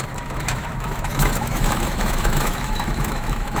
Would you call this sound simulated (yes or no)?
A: yes